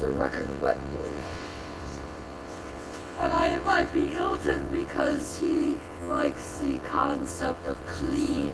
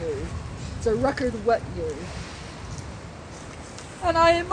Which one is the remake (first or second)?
first